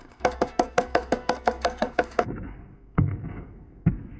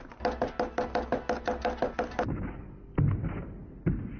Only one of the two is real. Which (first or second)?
second